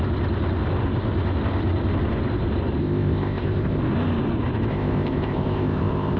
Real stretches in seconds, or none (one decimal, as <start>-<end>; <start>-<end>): 0.0-2.8; 3.8-4.7